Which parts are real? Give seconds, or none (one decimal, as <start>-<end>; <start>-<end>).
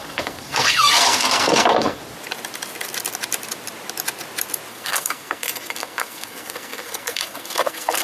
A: 2.0-4.7